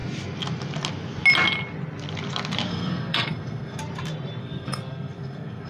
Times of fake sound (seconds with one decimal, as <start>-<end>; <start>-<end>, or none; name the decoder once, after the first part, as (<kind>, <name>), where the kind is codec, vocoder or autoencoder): 2.7-3.8 (codec, SNAC); 4.4-5.7